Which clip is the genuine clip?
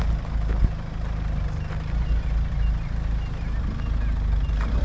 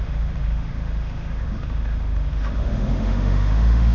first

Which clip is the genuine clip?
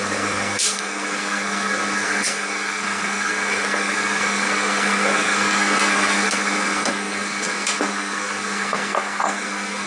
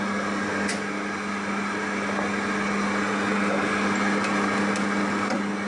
second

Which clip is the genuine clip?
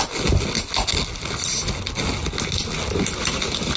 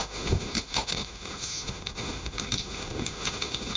first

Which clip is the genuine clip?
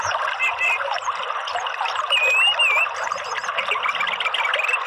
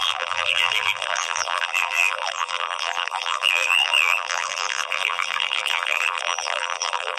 first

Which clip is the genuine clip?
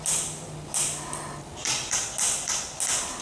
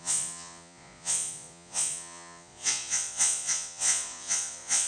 first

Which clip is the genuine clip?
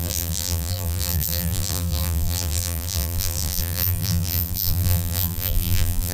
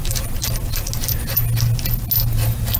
second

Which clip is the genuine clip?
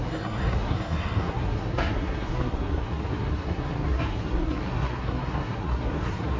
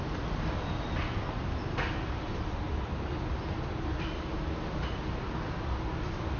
second